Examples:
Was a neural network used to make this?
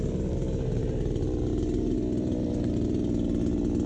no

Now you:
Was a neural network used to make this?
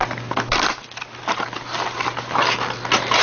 no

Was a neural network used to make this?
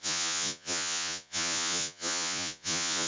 yes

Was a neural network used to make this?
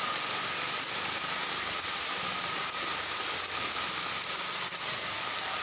no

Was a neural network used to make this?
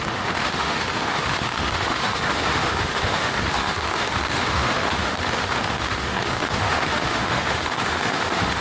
yes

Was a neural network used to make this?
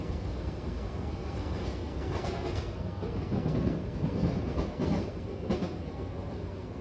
yes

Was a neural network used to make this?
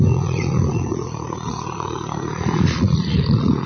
yes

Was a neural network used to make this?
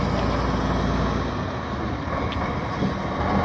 no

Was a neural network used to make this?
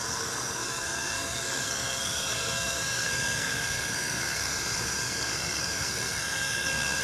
yes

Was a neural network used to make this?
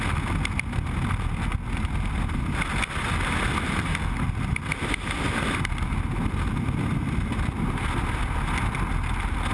no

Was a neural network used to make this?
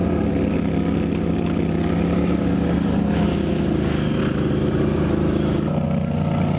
no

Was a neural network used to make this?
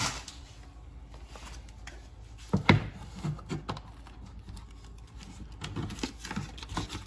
no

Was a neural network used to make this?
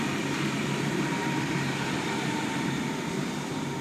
no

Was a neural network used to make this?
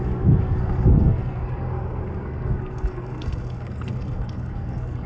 yes